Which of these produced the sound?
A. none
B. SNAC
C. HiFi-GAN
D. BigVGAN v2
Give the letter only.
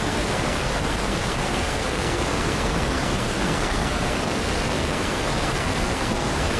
B